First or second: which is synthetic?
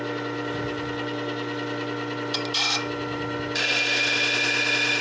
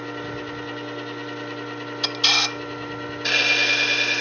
first